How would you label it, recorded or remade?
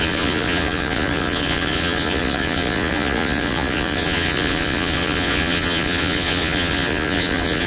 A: remade